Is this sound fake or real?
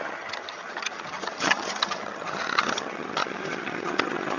fake